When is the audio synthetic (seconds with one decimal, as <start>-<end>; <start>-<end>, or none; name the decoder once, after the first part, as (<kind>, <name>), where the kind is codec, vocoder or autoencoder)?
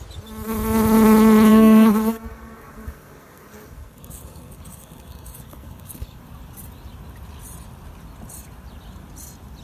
1.5-6.2 (codec, SNAC)